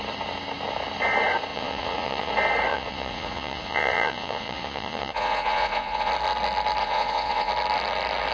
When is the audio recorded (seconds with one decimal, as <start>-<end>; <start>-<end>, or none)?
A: 0.0-1.5; 2.3-2.7; 6.1-6.8; 7.5-8.3